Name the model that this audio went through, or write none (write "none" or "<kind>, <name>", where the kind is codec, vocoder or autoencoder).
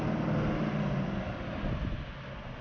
none